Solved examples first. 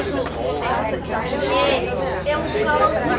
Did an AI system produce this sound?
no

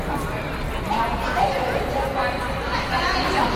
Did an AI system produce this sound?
no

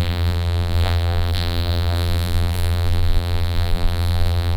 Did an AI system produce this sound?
yes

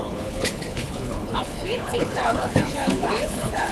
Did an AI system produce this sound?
yes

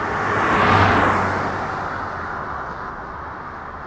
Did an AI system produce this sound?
no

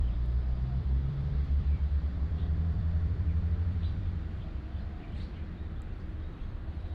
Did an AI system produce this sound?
yes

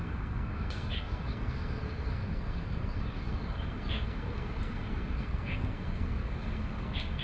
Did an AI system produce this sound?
yes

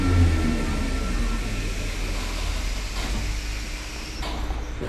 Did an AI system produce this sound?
no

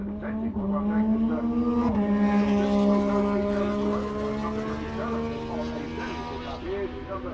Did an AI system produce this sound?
no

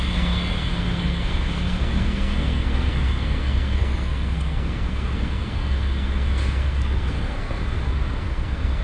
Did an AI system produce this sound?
yes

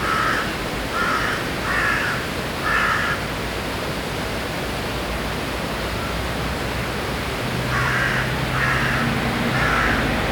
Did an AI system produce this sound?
no